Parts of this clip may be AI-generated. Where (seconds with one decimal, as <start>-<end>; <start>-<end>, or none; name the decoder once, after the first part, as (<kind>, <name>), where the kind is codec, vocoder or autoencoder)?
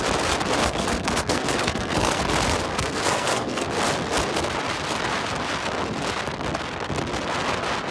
0.6-2.2 (codec, SNAC); 2.7-3.7